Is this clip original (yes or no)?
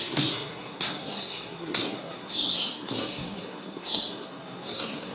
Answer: no